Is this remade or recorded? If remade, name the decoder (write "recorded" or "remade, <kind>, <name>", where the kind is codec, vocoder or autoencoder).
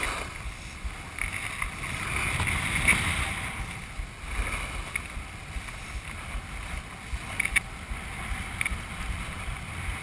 recorded